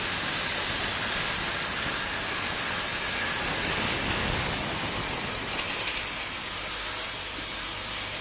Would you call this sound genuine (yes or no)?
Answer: yes